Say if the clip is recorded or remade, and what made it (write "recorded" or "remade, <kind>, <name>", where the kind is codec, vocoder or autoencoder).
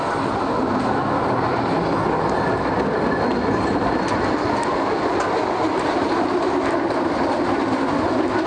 recorded